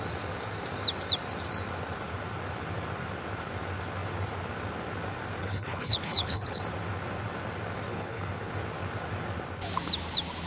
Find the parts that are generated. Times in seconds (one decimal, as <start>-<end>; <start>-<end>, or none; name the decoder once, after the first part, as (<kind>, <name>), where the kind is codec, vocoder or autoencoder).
5.4-6.6 (codec, HILCodec); 7.9-8.5